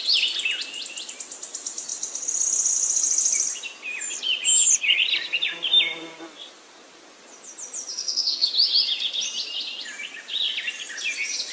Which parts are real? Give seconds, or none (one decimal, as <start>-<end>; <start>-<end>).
0.0-7.9; 8.5-11.5